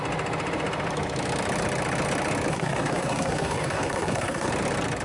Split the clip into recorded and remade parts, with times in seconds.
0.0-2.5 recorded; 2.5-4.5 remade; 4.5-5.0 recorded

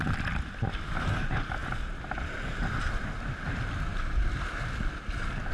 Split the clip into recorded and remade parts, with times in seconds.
0.0-5.5 recorded